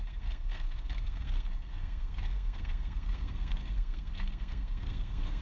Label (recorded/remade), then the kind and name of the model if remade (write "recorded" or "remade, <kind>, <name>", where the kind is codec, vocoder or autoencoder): remade, codec, SNAC